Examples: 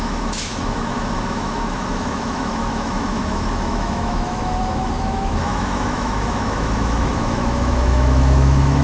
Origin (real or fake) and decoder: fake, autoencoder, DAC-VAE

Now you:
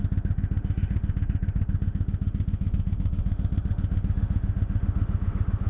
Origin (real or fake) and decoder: fake, autoencoder, DAC-VAE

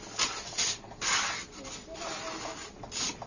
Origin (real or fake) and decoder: real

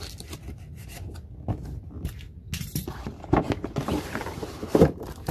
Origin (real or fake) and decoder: real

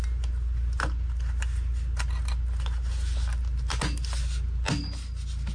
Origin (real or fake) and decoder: real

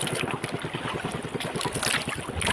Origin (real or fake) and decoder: real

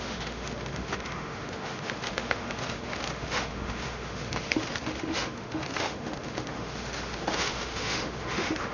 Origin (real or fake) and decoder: fake, autoencoder, DAC-VAE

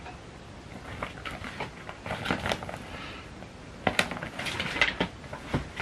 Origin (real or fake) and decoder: real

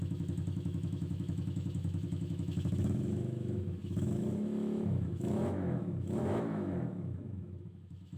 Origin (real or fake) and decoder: fake, autoencoder, DAC-VAE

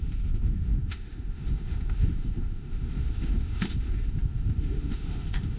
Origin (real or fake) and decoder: fake, autoencoder, DAC-VAE